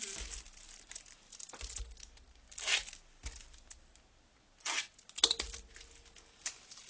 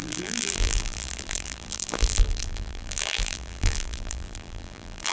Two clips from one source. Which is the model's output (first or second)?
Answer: second